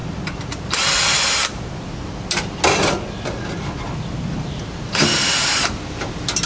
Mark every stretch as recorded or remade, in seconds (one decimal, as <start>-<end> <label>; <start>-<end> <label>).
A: 0.0-6.5 recorded